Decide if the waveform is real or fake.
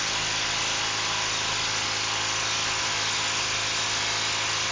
real